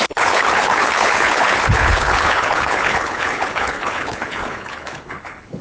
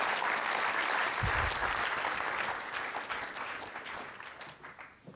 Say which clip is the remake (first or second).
first